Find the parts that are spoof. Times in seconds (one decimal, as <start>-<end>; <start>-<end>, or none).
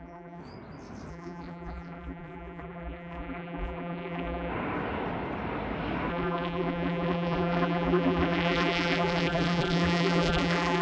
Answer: 0.0-0.4; 1.1-4.5; 6.1-10.8